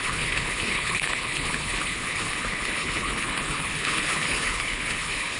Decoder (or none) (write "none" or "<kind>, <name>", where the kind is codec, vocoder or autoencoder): codec, HILCodec